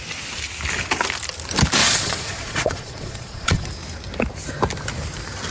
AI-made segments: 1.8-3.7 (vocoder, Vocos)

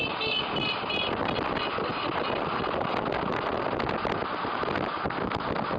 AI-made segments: none